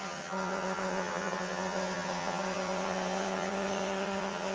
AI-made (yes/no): yes